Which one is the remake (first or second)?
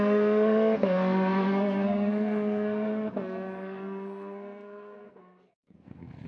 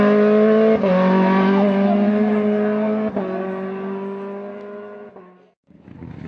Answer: first